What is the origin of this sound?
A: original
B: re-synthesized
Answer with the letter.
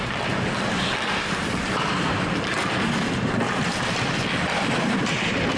A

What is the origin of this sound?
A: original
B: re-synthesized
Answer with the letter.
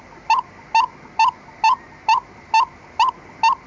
A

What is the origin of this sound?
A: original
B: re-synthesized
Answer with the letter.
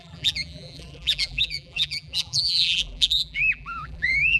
B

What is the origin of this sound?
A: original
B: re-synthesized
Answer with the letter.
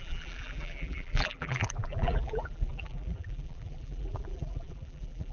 B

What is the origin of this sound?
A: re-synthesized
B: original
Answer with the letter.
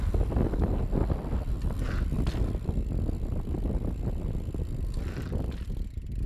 B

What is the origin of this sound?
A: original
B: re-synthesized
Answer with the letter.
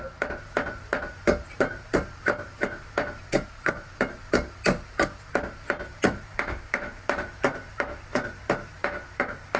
B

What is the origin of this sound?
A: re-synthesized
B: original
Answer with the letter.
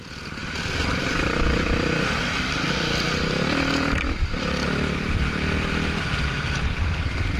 A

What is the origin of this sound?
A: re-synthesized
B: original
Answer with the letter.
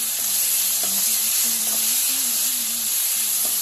A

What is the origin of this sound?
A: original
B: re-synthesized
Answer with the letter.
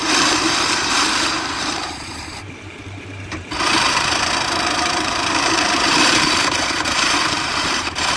B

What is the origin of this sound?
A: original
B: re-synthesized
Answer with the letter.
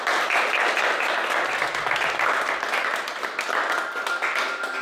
A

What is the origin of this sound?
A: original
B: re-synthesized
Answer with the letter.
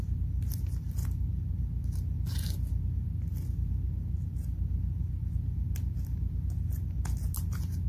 A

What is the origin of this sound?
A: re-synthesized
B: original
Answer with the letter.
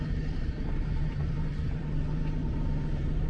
A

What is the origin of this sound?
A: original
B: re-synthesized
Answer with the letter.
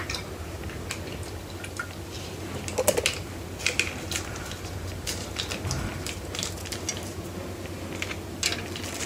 A